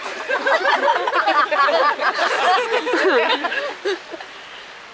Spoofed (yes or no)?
no